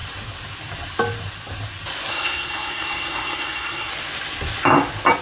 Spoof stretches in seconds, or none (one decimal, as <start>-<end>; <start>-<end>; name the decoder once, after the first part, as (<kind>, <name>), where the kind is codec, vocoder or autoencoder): 2.1-3.9 (codec, SNAC)